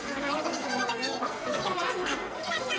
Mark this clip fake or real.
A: fake